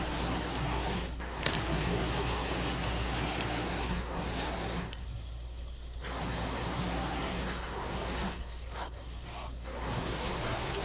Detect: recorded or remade remade